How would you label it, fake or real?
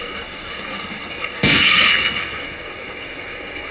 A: fake